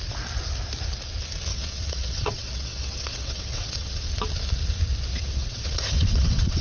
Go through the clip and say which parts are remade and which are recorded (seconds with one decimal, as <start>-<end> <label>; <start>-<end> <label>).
0.0-1.5 recorded; 1.5-4.1 remade; 4.1-5.1 recorded; 5.1-6.6 remade